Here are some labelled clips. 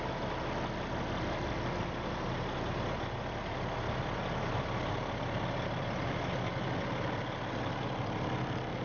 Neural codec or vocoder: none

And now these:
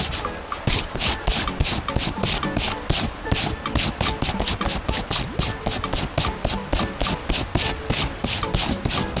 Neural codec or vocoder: none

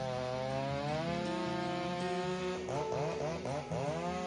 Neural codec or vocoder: none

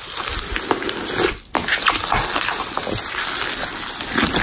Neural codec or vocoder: none